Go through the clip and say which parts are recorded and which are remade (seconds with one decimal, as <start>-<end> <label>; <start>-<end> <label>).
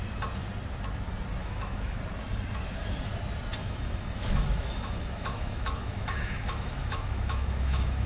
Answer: 0.0-1.4 recorded; 1.4-2.0 remade; 2.0-3.6 recorded; 3.6-8.1 remade